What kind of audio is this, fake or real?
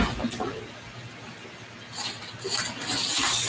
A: real